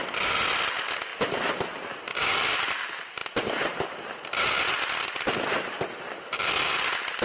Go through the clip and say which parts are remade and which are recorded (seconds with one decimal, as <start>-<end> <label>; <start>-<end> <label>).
0.0-7.2 recorded

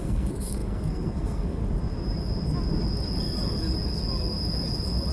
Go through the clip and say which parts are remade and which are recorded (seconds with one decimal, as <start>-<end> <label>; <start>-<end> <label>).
0.0-1.6 remade; 1.6-5.1 recorded

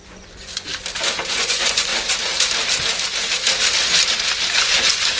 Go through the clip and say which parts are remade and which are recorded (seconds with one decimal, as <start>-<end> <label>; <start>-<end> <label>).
0.0-0.7 remade; 0.7-1.3 recorded; 1.3-1.9 remade; 1.9-4.5 recorded; 4.5-5.2 remade

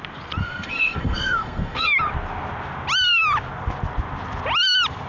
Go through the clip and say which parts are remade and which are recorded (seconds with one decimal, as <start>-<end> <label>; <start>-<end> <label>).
0.0-0.4 recorded; 0.4-1.9 remade; 1.9-5.1 recorded